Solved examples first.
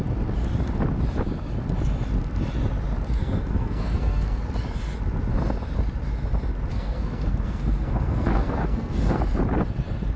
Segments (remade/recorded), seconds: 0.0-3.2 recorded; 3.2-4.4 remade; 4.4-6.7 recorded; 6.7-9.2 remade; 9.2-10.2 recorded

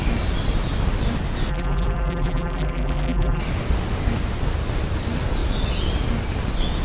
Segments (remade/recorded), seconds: 0.0-1.5 recorded; 1.5-3.4 remade; 3.4-6.8 recorded

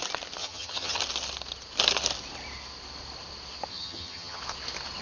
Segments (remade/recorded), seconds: 0.0-0.4 recorded; 0.4-1.0 remade; 1.0-3.7 recorded; 3.7-4.4 remade; 4.4-5.0 recorded

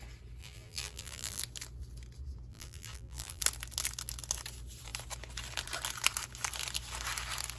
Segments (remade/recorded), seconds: 0.0-0.4 recorded; 0.4-1.4 remade; 1.4-2.5 recorded; 2.5-3.4 remade; 3.4-7.6 recorded

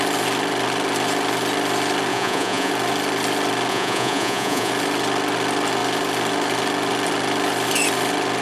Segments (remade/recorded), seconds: 0.0-2.1 recorded; 2.1-2.7 remade; 2.7-3.7 recorded; 3.7-4.7 remade; 4.7-8.4 recorded